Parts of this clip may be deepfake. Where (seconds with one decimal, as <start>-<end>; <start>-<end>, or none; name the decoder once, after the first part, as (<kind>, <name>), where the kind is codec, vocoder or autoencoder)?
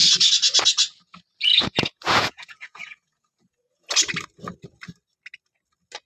1.5-3.9 (vocoder, Vocos)